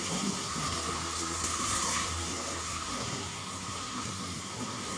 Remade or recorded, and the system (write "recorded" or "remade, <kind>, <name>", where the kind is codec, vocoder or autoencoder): remade, codec, SNAC